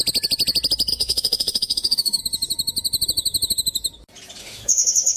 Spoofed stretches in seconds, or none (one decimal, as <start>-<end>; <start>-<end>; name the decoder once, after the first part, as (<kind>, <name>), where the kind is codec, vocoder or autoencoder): 0.9-2.2 (autoencoder, DAC-VAE); 4.4-5.2